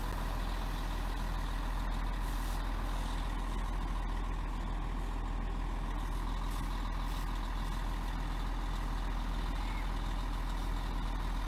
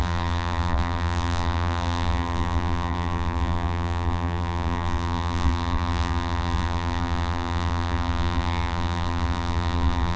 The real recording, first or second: first